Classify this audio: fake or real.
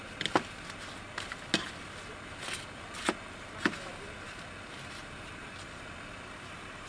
real